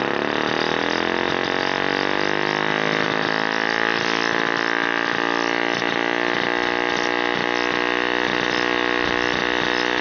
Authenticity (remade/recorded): recorded